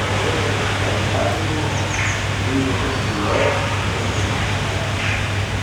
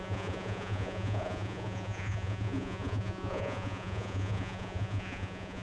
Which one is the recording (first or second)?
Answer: first